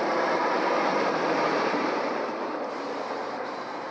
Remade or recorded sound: remade